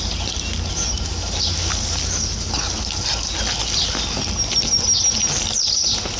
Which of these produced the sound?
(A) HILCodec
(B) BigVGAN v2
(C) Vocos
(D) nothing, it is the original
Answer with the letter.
D